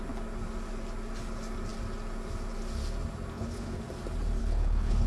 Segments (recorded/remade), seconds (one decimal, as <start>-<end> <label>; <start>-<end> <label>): 0.0-3.3 recorded; 3.3-3.8 remade; 3.8-4.4 recorded; 4.4-5.1 remade